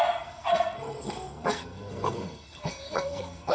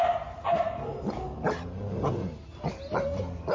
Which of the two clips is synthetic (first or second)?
first